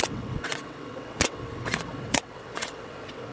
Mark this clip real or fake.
fake